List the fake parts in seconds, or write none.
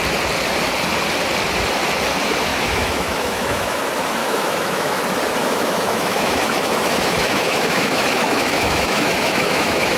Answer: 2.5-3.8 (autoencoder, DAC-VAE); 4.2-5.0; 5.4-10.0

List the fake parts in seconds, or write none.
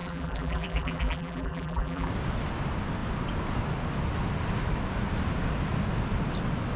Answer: 0.0-2.1 (vocoder, BigVGAN v2)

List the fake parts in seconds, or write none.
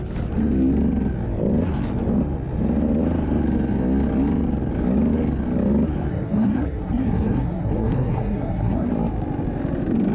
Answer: 6.1-8.9 (codec, SNAC)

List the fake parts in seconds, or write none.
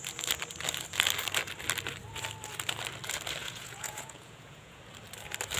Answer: 3.4-4.8 (vocoder, Vocos)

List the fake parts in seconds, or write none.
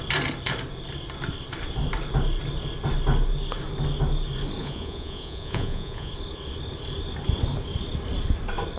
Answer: 4.6-6.1 (vocoder, Vocos)